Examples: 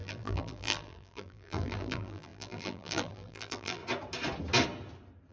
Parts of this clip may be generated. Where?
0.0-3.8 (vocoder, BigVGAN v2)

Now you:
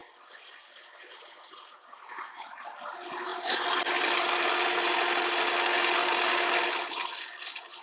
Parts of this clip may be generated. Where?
none

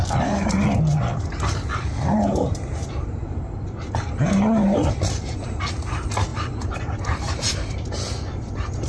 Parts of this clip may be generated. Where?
1.1-3.4 (vocoder, BigVGAN v2); 6.3-7.7

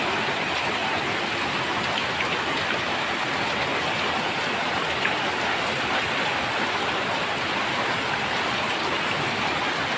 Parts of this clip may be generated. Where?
none

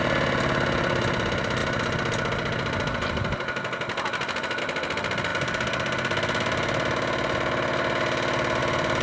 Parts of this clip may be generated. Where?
0.0-1.6 (vocoder, BigVGAN v2); 4.6-5.3; 8.6-9.0

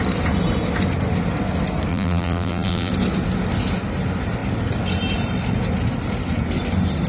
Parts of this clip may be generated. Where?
1.9-2.9 (vocoder, BigVGAN v2)

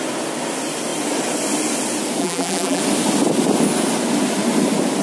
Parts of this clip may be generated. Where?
2.2-2.8 (vocoder, BigVGAN v2)

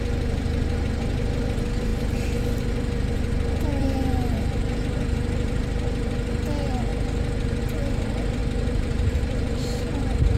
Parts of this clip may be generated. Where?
3.8-5.6 (vocoder, BigVGAN v2); 8.4-10.4